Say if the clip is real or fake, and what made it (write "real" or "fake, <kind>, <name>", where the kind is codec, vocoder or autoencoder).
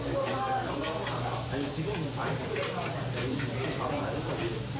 real